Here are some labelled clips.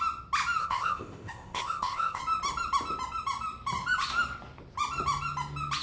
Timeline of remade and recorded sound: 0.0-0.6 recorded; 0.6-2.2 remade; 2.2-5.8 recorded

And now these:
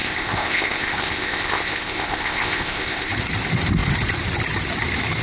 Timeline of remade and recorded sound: 0.0-3.1 remade; 3.1-5.2 recorded

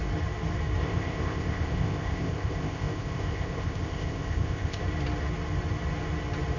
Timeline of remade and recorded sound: 0.0-0.8 recorded; 0.8-4.8 remade; 4.8-6.6 recorded